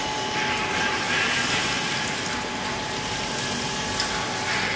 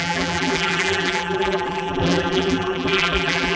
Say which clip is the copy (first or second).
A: second